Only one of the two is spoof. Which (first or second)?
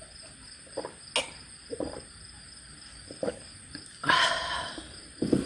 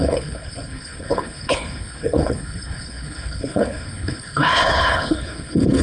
second